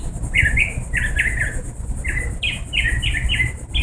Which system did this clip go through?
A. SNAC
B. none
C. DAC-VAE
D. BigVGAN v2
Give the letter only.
B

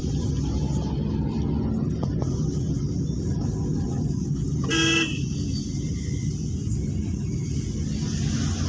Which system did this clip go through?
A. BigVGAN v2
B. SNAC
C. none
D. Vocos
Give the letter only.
C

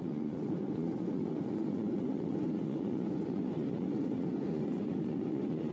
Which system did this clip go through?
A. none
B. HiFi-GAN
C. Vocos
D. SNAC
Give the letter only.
C